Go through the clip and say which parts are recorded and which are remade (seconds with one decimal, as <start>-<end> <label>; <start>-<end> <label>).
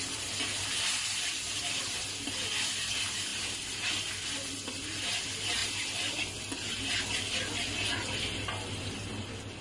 0.0-9.6 recorded